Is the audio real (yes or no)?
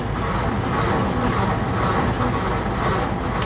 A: yes